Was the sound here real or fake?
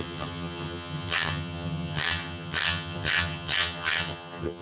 fake